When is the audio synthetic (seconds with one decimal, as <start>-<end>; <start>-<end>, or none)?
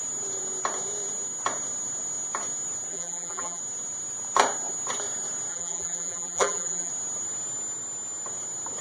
2.9-3.6; 5.5-6.9